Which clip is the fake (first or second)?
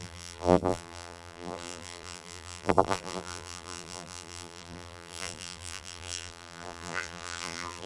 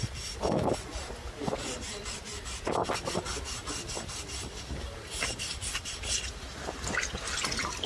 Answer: first